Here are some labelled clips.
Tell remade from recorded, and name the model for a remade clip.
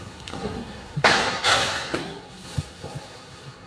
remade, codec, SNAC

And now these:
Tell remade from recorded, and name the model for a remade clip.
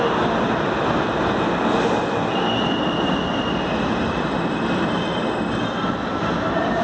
recorded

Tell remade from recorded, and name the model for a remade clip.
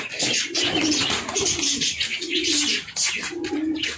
recorded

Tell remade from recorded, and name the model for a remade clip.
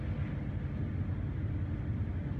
recorded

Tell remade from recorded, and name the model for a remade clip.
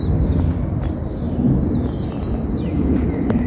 recorded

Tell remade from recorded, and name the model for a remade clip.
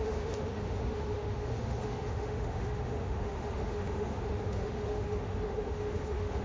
remade, autoencoder, DAC-VAE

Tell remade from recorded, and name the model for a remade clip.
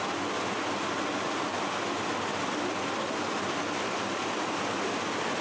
recorded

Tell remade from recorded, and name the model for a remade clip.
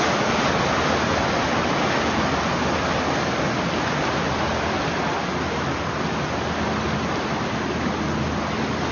recorded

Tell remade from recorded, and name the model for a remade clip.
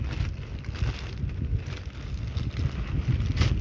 recorded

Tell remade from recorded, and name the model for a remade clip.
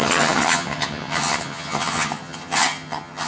remade, vocoder, HiFi-GAN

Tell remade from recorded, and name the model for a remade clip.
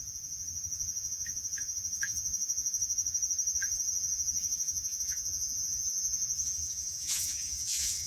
remade, vocoder, Vocos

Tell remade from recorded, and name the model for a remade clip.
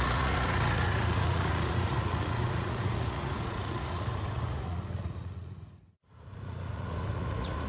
remade, vocoder, Vocos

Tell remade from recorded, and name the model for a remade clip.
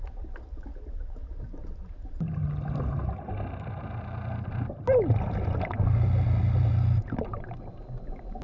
recorded